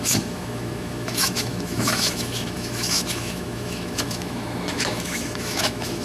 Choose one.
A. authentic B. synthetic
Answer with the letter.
B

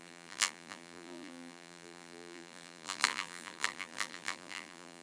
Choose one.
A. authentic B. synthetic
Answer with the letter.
B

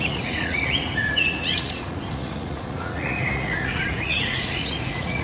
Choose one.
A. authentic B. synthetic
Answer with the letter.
B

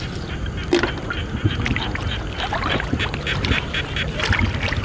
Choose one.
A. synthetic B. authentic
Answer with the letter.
B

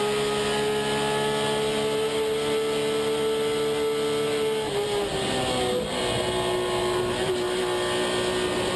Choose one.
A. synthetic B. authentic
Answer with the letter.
B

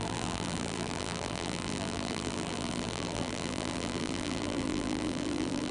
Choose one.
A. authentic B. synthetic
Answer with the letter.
B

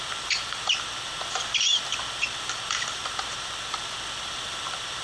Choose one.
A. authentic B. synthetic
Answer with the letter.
B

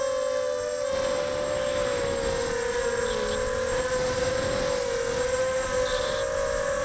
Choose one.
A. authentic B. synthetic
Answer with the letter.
A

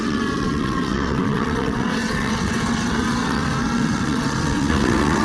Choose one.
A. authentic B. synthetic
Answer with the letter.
B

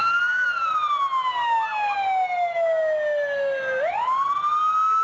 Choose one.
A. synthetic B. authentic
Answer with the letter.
B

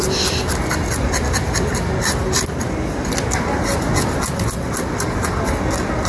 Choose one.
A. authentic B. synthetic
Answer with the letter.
A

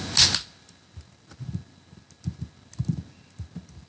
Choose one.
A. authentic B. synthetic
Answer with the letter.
A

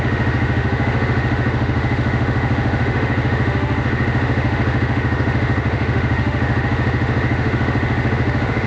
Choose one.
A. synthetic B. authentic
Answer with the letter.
A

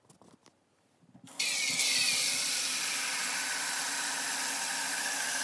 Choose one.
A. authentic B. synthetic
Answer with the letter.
A